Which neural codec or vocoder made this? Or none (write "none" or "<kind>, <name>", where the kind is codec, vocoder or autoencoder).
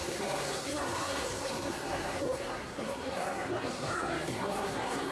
codec, SNAC